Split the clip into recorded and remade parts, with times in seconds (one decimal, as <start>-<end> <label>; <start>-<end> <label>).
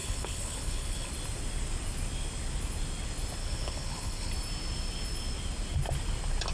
0.0-1.1 remade; 1.1-3.4 recorded; 3.4-4.3 remade; 4.3-6.5 recorded